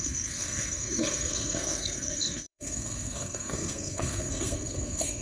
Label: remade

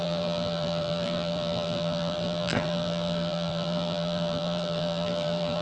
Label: remade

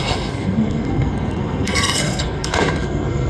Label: remade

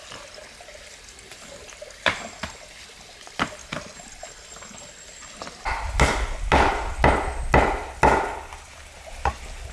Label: recorded